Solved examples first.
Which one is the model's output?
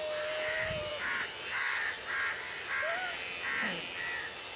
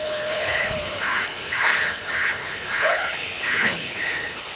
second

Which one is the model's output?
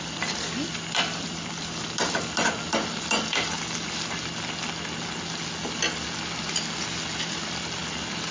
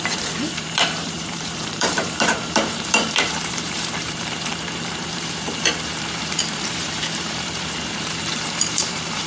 second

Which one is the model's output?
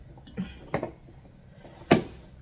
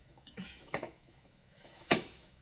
second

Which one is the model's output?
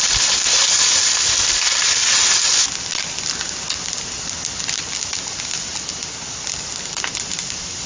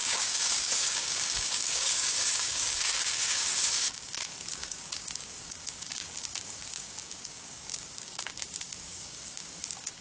second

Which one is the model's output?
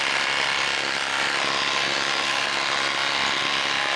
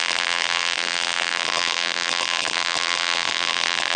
second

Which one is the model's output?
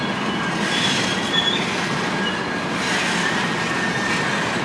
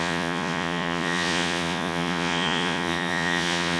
second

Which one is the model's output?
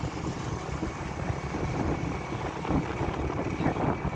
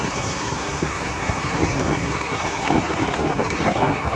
second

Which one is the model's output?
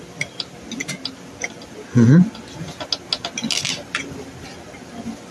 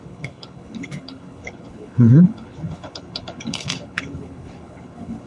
second